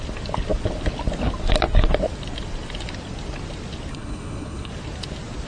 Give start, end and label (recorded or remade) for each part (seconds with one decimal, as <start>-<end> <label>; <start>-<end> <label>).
0.0-3.9 recorded; 3.9-4.7 remade; 4.7-5.5 recorded